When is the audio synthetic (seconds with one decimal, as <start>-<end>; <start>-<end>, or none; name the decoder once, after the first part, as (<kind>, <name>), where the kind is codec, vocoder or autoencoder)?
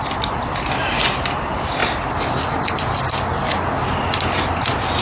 none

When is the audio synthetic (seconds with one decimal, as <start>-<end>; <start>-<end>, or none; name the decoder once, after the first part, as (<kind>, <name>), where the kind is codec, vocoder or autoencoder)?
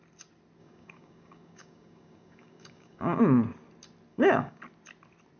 0.6-3.2 (codec, DAC); 4.1-4.6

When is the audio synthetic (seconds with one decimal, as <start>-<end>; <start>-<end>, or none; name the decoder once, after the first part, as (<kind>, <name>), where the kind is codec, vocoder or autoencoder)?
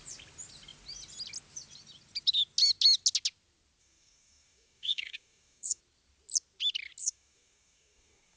3.8-5.8 (codec, DAC); 7.0-8.4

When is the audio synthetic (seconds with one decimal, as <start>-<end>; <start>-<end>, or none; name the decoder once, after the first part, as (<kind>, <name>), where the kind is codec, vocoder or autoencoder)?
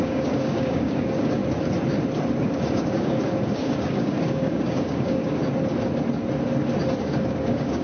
0.0-1.4 (codec, DAC); 2.4-5.4; 7.0-7.8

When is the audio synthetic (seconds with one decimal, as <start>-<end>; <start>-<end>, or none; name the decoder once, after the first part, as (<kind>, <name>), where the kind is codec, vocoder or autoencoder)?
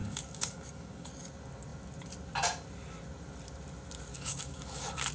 0.0-1.1 (codec, DAC); 4.1-5.1